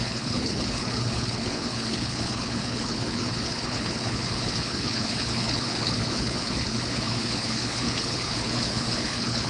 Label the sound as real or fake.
fake